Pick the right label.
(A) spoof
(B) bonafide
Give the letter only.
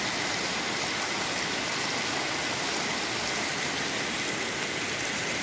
B